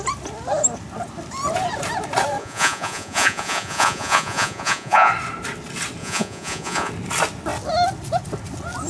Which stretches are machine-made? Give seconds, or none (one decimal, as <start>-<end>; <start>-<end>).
2.4-5.1; 6.0-6.9